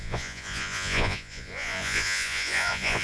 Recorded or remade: remade